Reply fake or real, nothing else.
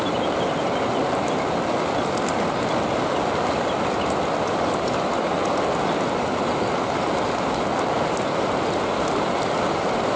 real